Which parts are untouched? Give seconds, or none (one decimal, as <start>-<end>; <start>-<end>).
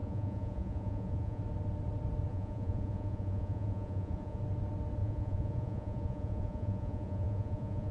1.4-2.3; 4.4-5.0